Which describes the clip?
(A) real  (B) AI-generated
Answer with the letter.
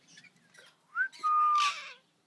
A